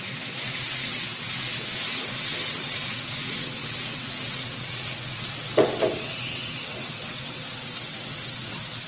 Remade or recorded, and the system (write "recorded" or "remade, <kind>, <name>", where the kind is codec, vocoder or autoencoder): remade, vocoder, WaveNeXt